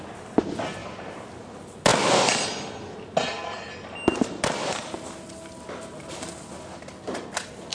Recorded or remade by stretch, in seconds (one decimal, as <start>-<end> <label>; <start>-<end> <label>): 0.0-0.8 recorded; 0.8-1.4 remade; 1.4-7.7 recorded